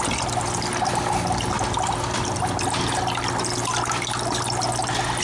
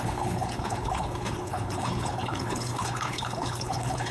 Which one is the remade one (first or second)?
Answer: second